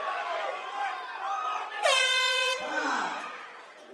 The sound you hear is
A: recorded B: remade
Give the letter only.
B